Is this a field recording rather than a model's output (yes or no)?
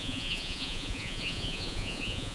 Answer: no